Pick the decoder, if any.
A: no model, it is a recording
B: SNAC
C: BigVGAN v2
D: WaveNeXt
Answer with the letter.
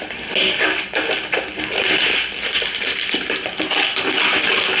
A